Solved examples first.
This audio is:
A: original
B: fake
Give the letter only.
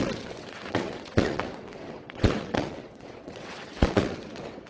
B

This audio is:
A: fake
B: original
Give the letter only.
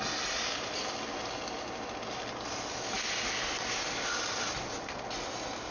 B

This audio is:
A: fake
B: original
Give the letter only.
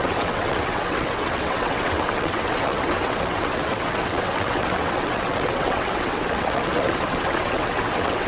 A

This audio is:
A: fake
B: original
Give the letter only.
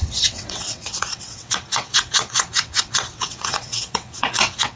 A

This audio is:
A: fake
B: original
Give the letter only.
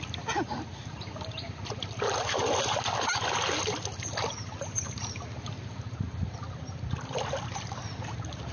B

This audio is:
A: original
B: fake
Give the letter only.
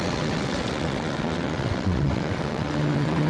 B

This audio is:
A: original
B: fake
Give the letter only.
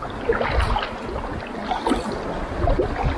A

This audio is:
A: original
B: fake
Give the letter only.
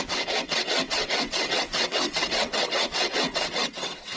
B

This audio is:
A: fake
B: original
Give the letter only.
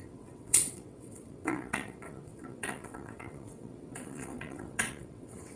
A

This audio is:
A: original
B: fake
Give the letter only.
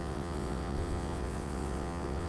B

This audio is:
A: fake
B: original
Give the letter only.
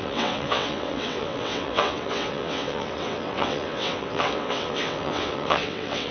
A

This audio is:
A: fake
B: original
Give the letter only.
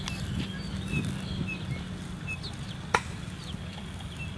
B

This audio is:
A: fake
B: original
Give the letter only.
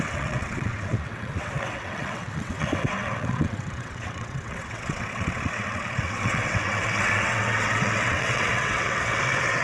A